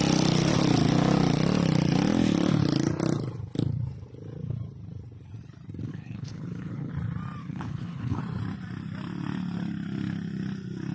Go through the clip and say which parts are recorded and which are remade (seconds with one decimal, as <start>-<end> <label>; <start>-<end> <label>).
0.0-5.9 recorded; 5.9-6.9 remade; 6.9-7.4 recorded; 7.4-8.2 remade; 8.2-10.9 recorded